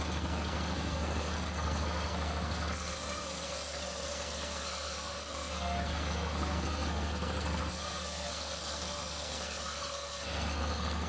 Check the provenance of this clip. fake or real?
fake